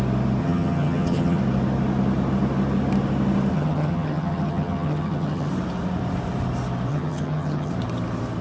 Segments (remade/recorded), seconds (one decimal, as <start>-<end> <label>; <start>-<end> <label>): 0.0-0.4 recorded; 0.4-1.4 remade; 1.4-3.5 recorded; 3.5-5.5 remade; 5.5-6.9 recorded; 6.9-7.7 remade; 7.7-8.4 recorded